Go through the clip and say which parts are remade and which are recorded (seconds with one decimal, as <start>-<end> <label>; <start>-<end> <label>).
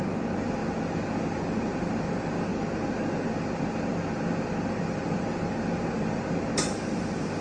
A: 0.0-0.6 remade; 0.6-1.6 recorded; 1.6-2.5 remade; 2.5-4.7 recorded; 4.7-7.4 remade